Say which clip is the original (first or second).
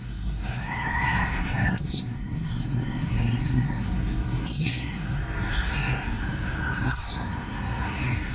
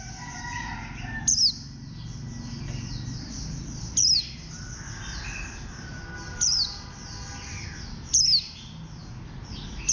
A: second